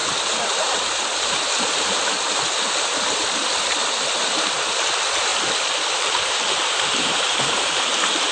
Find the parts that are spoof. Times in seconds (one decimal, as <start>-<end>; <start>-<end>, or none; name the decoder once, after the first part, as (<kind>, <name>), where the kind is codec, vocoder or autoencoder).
5.3-8.3 (vocoder, BigVGAN v2)